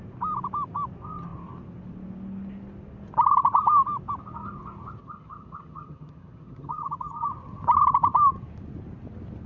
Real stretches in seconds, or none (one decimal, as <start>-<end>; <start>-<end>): 0.0-5.0; 7.3-9.5